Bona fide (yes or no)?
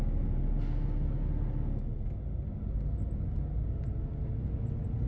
yes